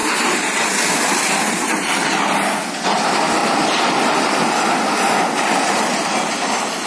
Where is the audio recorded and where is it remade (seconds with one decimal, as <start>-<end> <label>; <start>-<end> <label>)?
0.0-2.2 remade; 2.2-3.4 recorded; 3.4-5.0 remade; 5.0-6.9 recorded